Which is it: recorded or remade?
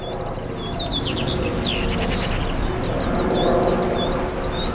recorded